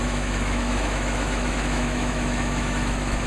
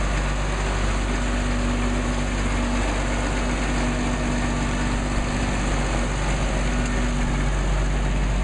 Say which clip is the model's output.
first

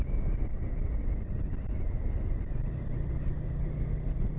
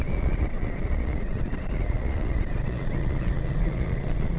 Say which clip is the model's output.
second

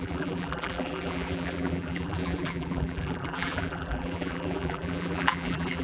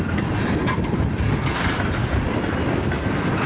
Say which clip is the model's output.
first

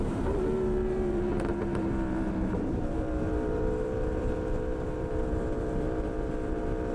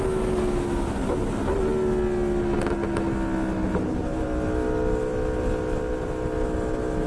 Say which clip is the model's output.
first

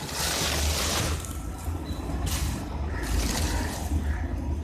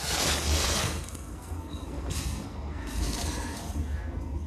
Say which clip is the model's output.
second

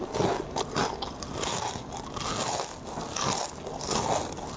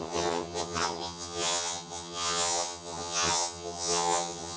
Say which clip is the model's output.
second